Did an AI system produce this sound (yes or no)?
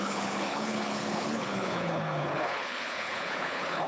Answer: yes